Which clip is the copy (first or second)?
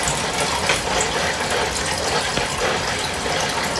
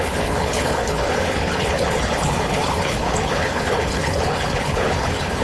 second